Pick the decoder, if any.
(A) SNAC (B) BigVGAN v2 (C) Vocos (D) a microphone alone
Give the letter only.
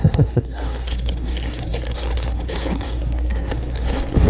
A